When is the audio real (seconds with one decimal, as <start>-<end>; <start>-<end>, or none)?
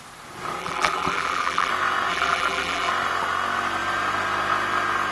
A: 0.0-0.6; 1.7-2.1; 2.9-5.1